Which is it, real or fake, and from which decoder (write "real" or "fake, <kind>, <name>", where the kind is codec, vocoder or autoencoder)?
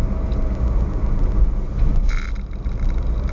real